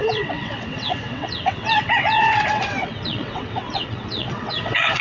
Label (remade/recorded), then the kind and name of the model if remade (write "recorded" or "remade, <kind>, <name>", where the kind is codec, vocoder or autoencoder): remade, vocoder, WaveNeXt